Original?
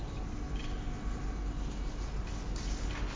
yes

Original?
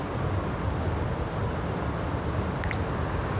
yes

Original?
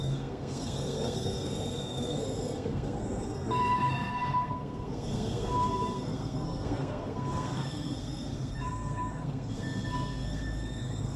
no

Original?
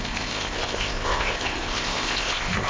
no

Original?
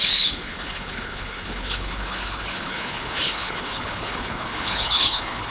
no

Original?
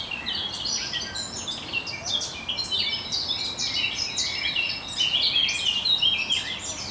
yes